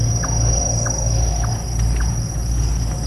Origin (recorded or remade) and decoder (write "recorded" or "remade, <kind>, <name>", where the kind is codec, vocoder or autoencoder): recorded